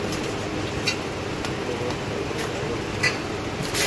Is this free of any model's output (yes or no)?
yes